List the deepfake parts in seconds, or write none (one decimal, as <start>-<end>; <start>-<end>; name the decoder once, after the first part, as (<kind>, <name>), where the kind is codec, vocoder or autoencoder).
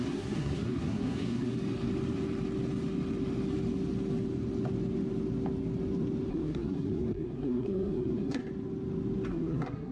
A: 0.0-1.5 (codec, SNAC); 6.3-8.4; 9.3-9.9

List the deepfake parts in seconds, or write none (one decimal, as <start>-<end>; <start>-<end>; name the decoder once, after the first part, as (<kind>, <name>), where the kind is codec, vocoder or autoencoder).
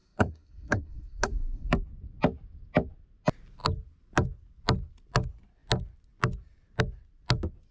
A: 0.0-1.7 (codec, SNAC)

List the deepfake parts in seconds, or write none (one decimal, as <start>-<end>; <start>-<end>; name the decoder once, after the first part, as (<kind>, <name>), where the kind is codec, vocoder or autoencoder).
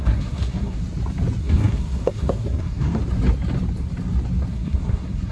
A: 0.0-0.8 (codec, SNAC); 1.4-3.0; 4.5-5.3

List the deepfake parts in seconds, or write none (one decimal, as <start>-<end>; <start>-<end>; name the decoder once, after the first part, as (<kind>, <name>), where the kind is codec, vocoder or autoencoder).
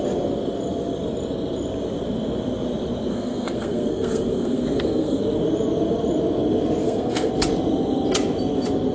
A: 3.1-5.2 (codec, SNAC); 6.8-7.3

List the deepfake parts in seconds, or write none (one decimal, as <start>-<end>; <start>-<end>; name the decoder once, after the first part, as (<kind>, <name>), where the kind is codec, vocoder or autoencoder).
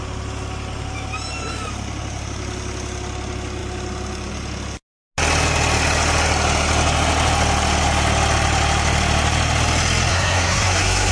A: 10.1-11.1 (codec, SNAC)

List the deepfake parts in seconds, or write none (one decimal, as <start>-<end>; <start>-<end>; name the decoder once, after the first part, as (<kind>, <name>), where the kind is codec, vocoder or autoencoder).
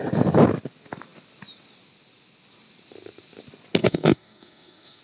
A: 3.8-5.0 (codec, SNAC)